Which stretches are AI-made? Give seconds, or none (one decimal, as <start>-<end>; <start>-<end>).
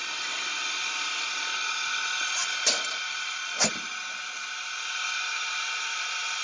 0.0-2.4; 3.1-6.4